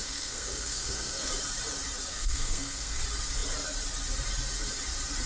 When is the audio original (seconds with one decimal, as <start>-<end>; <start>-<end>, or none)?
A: 1.3-2.1; 3.0-5.3